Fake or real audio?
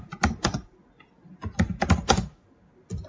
real